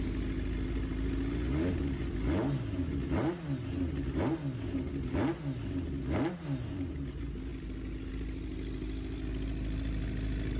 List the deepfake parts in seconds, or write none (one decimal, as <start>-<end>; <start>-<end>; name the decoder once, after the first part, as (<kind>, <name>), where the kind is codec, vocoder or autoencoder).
none